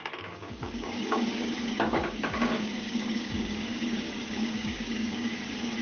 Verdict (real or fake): fake